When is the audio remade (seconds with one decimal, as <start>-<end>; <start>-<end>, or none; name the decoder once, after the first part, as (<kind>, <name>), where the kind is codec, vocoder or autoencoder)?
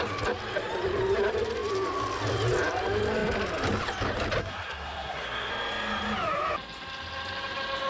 4.4-5.5 (codec, SNAC)